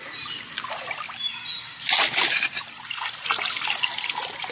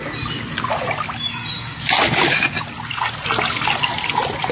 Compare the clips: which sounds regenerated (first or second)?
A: first